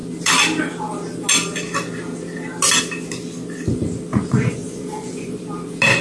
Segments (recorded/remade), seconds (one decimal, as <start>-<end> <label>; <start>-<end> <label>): 0.0-4.1 recorded; 4.1-5.4 remade; 5.4-6.0 recorded

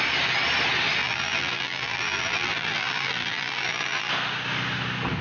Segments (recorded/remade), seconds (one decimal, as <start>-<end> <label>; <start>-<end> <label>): 0.0-1.0 recorded; 1.0-4.1 remade; 4.1-5.2 recorded

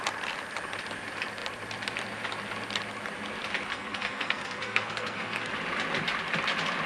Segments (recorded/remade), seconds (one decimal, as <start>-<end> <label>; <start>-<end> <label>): 0.0-3.7 recorded; 3.7-5.5 remade; 5.5-6.9 recorded